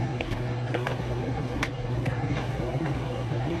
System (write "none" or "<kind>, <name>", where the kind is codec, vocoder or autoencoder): codec, SNAC